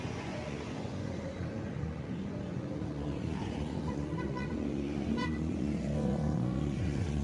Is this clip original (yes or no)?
no